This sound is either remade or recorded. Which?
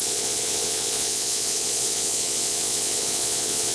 remade